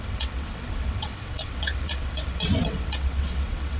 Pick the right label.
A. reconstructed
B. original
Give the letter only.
A